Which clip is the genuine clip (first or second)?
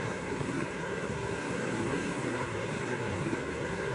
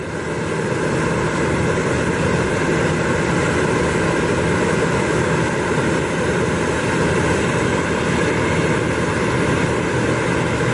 second